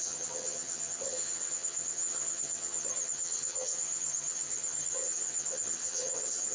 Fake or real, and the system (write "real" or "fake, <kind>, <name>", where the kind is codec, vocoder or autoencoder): fake, vocoder, HiFi-GAN